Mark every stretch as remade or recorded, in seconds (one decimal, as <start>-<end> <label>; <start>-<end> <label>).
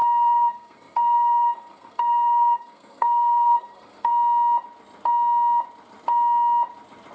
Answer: 0.0-4.1 remade; 4.1-7.1 recorded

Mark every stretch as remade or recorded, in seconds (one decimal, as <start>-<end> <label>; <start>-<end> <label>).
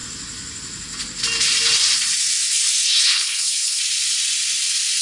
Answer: 0.0-3.0 recorded; 3.0-3.8 remade; 3.8-5.0 recorded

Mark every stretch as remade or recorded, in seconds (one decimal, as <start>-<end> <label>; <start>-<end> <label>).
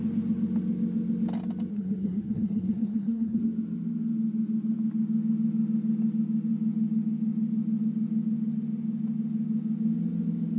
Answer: 0.0-1.7 recorded; 1.7-3.4 remade; 3.4-10.6 recorded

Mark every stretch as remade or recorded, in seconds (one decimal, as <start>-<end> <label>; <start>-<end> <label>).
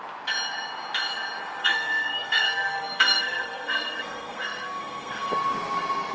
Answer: 0.0-1.6 recorded; 1.6-5.3 remade; 5.3-6.1 recorded